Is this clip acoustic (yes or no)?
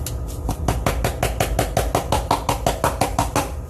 yes